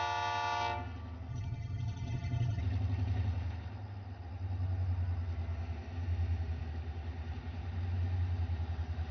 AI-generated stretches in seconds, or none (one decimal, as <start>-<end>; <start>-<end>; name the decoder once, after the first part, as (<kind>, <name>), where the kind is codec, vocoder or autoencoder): 1.3-2.6 (vocoder, HiFi-GAN)